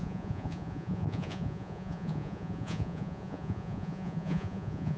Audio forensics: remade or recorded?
remade